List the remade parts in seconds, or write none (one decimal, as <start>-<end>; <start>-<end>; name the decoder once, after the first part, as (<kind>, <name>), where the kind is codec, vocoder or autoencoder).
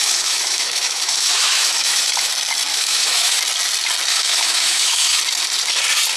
0.0-2.3 (autoencoder, DAC-VAE); 2.7-3.4; 4.1-5.2